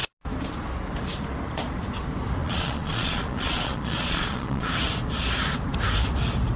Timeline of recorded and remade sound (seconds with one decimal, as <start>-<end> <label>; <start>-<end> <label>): 0.0-2.4 recorded; 2.4-4.7 remade; 4.7-6.6 recorded